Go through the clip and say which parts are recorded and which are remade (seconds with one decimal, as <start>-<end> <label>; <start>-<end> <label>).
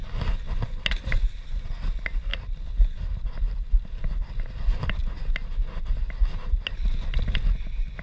0.0-8.0 recorded